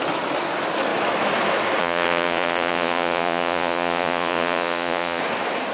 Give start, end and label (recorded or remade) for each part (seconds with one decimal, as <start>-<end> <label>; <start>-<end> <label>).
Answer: 0.0-1.8 recorded; 1.8-5.2 remade; 5.2-5.7 recorded